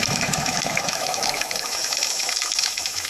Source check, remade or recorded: remade